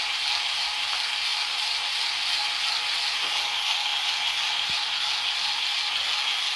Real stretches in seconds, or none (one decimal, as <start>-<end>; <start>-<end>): 0.0-6.6